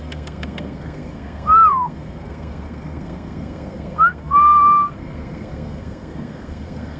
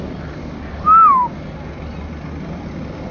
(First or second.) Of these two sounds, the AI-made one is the first